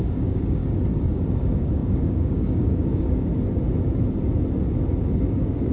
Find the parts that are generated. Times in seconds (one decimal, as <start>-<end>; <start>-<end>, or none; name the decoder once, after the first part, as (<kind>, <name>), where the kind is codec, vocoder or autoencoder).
0.0-0.6 (codec, DAC); 1.1-3.3; 5.0-5.7